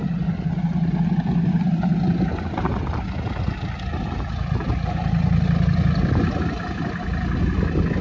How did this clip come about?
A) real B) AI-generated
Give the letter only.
A